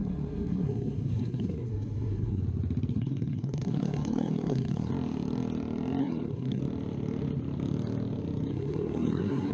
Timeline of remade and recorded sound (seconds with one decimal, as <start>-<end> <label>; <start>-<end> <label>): 0.0-2.4 remade; 2.4-2.9 recorded; 2.9-4.9 remade; 4.9-6.0 recorded; 6.0-6.6 remade; 6.6-8.5 recorded; 8.5-9.5 remade